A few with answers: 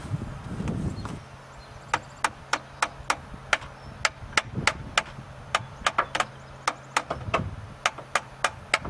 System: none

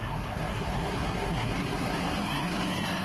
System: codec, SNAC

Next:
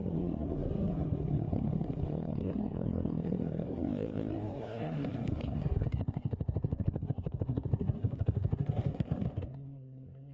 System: codec, SNAC